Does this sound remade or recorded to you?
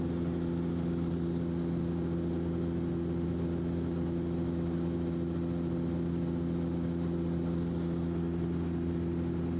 recorded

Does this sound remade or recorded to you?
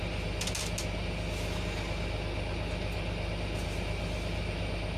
recorded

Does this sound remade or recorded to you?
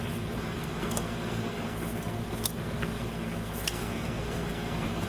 remade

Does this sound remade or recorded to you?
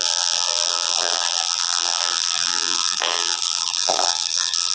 remade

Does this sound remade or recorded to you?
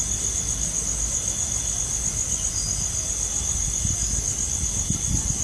recorded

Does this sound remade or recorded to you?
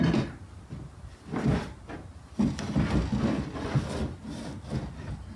recorded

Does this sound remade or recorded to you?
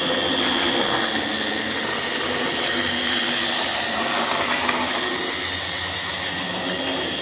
recorded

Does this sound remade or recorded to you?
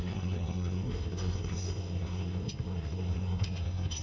remade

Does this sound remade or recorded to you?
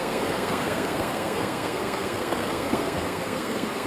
remade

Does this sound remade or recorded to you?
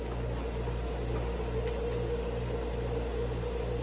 recorded